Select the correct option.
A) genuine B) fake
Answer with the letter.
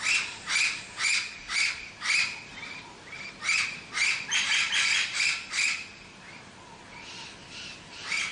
A